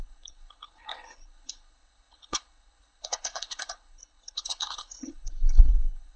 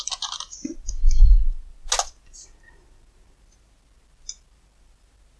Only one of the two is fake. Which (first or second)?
first